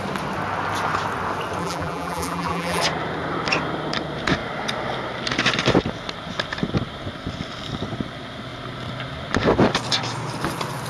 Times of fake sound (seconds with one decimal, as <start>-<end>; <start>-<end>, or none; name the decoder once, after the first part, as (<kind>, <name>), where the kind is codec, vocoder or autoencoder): 1.6-2.8 (vocoder, BigVGAN v2)